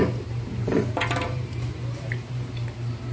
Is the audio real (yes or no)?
no